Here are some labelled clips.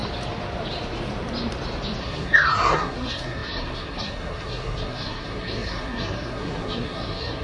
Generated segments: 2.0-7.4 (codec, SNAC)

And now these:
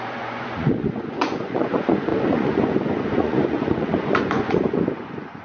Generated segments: 0.0-5.4 (vocoder, Vocos)

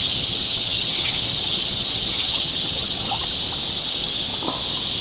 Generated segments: 0.0-3.2 (vocoder, HiFi-GAN); 3.7-4.3

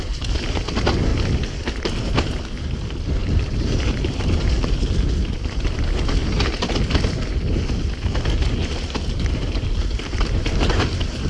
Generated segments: 3.2-4.2 (vocoder, BigVGAN v2); 8.4-10.9

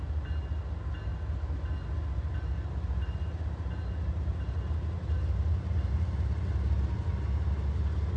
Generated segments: none

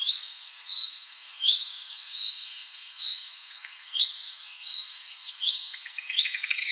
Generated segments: 0.0-6.7 (codec, SNAC)